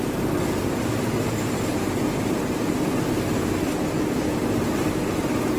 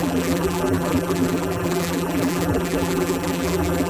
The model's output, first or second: second